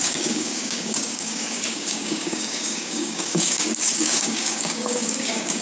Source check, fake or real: fake